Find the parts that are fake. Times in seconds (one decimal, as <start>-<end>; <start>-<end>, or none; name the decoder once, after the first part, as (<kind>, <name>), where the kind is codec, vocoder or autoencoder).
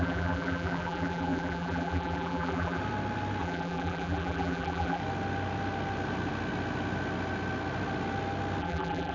0.0-2.8 (vocoder, BigVGAN v2); 3.4-5.0; 8.6-9.1